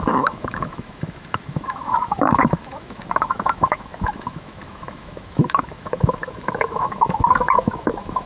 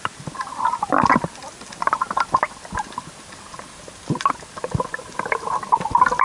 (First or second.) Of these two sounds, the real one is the second